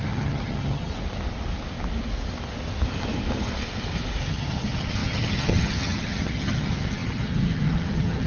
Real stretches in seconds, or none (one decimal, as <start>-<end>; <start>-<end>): 0.9-4.3